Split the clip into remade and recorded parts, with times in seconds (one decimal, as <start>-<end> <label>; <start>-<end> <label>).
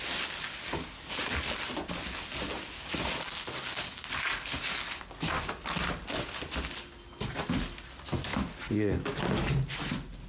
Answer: 0.0-8.3 recorded; 8.3-9.2 remade; 9.2-10.3 recorded